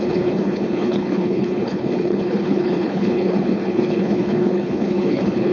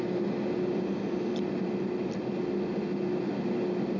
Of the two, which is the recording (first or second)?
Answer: second